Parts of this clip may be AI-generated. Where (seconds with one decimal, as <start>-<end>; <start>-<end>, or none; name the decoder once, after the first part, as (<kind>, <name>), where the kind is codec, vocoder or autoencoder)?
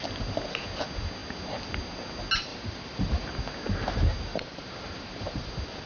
2.5-3.4 (vocoder, BigVGAN v2); 4.3-5.5